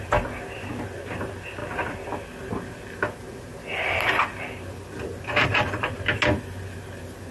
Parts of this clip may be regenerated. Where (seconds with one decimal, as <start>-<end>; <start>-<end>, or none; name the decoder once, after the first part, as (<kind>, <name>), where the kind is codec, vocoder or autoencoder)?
none